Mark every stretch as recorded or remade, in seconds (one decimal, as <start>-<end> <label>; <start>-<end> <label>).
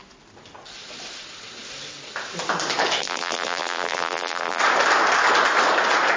0.0-3.0 recorded; 3.0-4.6 remade; 4.6-6.2 recorded